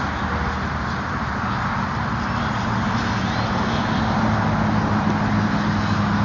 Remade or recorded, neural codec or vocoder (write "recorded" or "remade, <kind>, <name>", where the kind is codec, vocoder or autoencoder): recorded